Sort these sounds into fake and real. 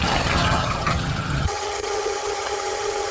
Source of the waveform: fake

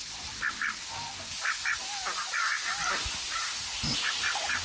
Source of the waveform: real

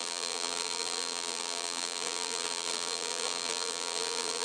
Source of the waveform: fake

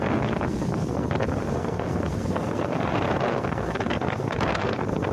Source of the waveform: fake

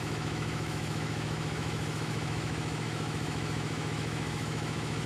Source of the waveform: fake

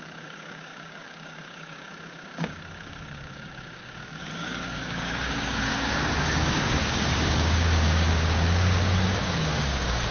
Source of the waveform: fake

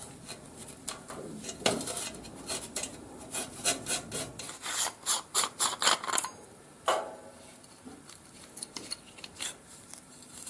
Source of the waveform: real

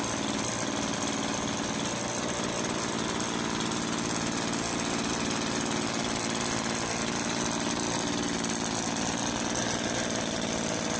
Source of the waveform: real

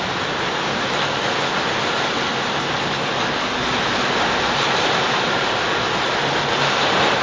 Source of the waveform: real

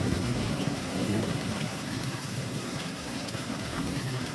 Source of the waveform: fake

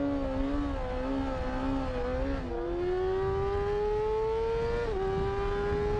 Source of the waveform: real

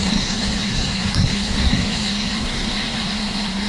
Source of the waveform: fake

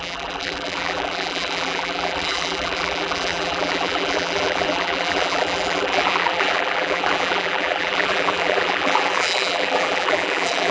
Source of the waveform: fake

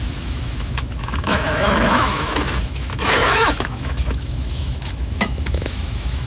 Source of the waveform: fake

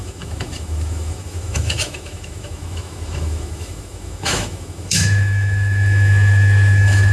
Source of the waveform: fake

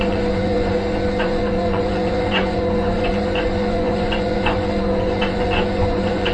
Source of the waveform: fake